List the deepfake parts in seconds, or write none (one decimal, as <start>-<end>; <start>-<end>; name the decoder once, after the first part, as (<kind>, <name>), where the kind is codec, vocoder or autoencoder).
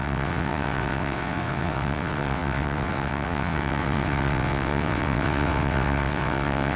0.0-6.8 (vocoder, WaveNeXt)